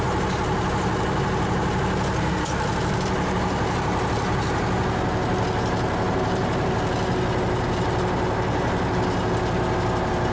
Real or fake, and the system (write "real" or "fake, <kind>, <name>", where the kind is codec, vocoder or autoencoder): real